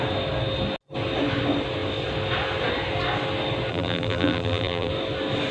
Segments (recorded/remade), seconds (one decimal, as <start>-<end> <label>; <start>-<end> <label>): 0.0-3.7 recorded; 3.7-4.9 remade; 4.9-5.5 recorded